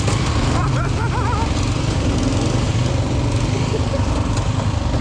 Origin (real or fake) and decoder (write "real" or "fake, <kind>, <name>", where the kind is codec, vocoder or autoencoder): real